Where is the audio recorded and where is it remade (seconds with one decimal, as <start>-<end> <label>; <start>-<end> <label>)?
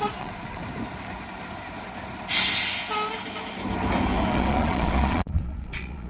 0.0-0.6 remade; 0.6-4.3 recorded; 4.3-6.1 remade